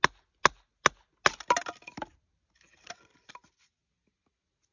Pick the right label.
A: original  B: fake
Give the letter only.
A